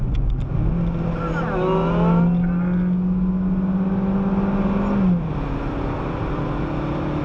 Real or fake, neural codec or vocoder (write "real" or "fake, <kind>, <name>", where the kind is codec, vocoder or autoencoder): real